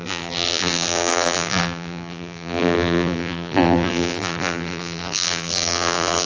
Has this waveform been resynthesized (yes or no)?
yes